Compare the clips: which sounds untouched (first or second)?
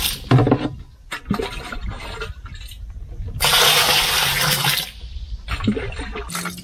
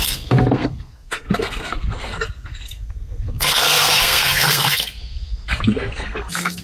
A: first